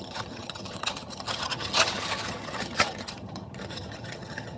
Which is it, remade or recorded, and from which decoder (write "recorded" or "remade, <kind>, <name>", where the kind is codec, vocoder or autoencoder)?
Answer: remade, vocoder, HiFi-GAN